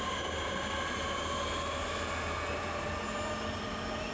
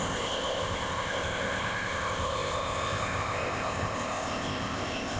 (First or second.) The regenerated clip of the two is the second